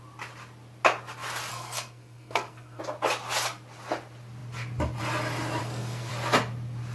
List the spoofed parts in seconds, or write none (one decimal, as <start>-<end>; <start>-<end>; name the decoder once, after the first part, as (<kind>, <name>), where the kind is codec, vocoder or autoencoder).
1.5-2.8 (codec, SNAC); 5.6-6.1